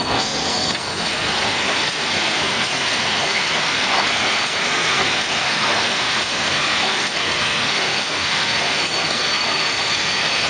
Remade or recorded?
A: remade